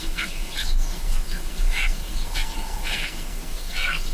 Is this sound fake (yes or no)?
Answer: yes